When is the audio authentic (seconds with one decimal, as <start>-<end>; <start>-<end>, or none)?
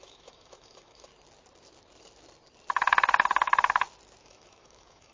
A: 1.1-4.2